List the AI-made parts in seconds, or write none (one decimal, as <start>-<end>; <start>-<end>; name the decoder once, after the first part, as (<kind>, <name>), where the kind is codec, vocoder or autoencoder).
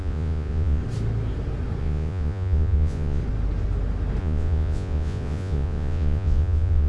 0.0-0.8 (vocoder, Vocos); 1.8-3.2; 4.2-6.9